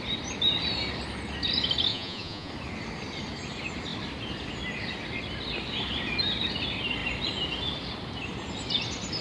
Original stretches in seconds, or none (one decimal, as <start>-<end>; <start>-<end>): 0.0-1.9; 2.5-9.2